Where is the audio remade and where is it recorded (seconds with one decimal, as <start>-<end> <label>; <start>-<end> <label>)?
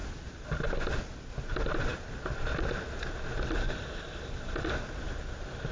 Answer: 0.0-1.9 remade; 1.9-4.0 recorded; 4.0-5.7 remade